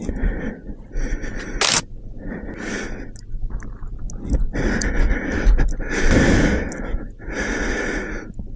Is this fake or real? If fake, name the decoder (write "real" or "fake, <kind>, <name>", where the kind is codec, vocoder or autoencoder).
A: real